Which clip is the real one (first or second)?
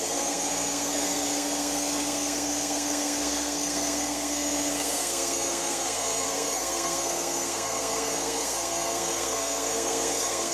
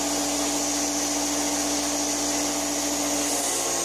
second